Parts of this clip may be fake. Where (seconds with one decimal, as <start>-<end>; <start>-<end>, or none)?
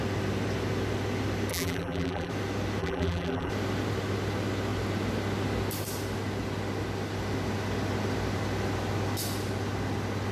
1.5-2.3; 2.8-3.5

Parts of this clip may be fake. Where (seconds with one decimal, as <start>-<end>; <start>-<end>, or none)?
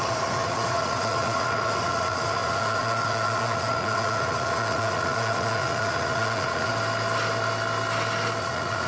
0.0-6.7; 8.4-8.9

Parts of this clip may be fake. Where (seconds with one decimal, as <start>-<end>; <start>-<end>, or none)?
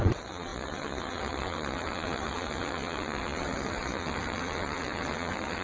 0.0-5.6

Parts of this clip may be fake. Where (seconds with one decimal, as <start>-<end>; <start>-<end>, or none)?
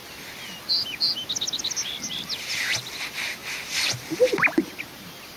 none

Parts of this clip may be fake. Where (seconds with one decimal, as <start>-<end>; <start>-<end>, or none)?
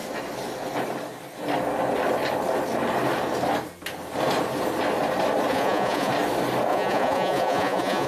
5.5-6.1; 6.7-8.1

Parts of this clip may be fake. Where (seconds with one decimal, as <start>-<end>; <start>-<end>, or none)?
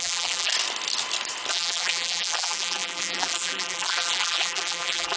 0.0-0.5; 1.5-5.2